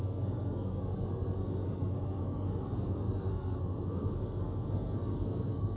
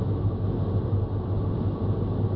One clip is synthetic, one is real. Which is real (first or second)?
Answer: second